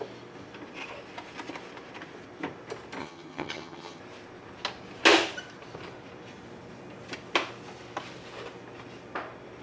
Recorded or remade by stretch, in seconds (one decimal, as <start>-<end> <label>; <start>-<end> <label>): 0.0-3.0 recorded; 3.0-4.0 remade; 4.0-9.6 recorded